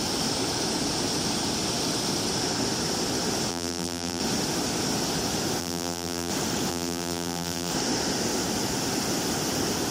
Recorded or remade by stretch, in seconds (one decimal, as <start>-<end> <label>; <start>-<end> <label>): 0.0-3.5 recorded; 3.5-4.2 remade; 4.2-5.6 recorded; 5.6-6.3 remade; 6.3-6.7 recorded; 6.7-7.7 remade; 7.7-9.9 recorded

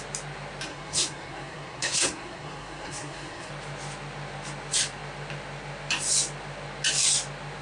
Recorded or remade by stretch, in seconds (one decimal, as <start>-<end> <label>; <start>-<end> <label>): 0.0-0.7 recorded; 0.7-3.5 remade; 3.5-7.6 recorded

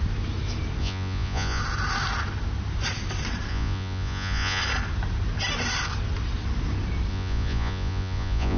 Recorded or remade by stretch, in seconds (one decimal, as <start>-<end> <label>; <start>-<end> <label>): 0.0-0.8 recorded; 0.8-1.6 remade; 1.6-3.5 recorded; 3.5-4.6 remade; 4.6-7.1 recorded; 7.1-8.6 remade

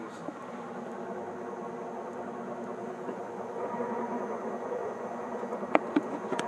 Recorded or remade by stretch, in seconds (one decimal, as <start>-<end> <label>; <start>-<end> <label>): 0.0-2.8 recorded; 2.8-6.5 remade

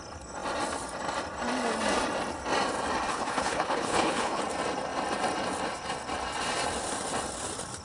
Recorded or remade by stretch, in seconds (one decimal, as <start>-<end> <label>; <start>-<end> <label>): 0.0-3.1 recorded; 3.1-4.4 remade; 4.4-7.8 recorded

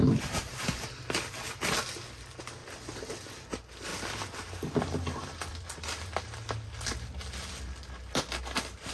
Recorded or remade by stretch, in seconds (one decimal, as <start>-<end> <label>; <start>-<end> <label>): 0.0-2.6 recorded; 2.6-3.2 remade; 3.2-3.9 recorded; 3.9-6.2 remade; 6.2-8.9 recorded

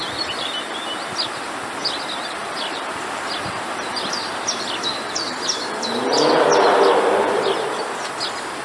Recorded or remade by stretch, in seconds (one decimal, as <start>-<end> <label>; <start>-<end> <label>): 0.0-8.6 recorded